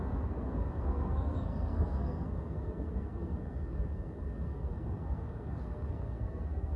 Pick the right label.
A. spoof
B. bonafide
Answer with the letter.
A